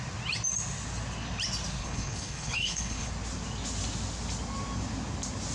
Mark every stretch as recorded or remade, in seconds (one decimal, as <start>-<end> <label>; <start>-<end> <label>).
0.0-1.8 recorded; 1.8-3.1 remade; 3.1-5.5 recorded